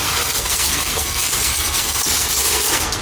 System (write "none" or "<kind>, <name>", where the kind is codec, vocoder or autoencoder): codec, SNAC